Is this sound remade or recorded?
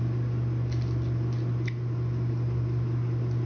recorded